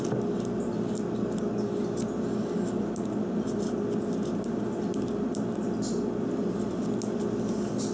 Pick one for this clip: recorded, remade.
recorded